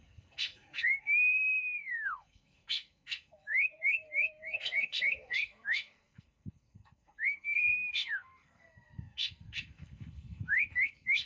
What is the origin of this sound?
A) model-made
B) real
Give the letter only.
A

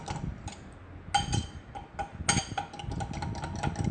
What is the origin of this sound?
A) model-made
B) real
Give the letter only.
B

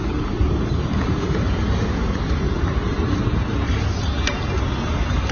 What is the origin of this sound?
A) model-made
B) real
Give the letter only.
A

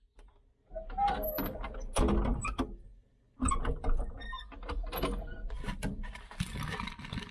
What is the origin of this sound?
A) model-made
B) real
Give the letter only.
B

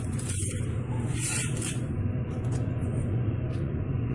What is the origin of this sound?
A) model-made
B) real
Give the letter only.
A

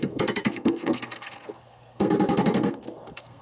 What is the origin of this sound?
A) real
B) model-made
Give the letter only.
B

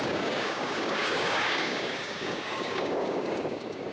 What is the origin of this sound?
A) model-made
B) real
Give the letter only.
A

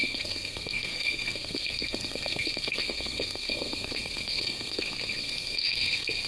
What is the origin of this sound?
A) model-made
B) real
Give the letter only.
A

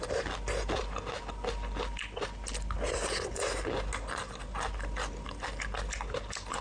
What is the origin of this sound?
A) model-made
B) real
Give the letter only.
B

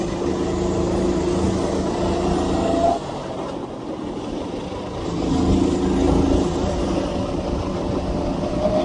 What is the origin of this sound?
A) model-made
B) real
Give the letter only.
B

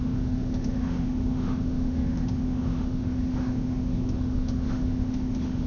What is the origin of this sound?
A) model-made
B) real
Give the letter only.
A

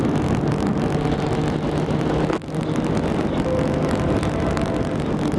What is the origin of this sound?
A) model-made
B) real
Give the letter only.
B